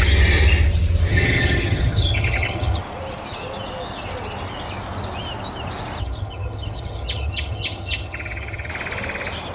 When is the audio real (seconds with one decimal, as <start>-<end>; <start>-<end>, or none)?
0.0-1.1; 2.8-6.0; 8.7-9.5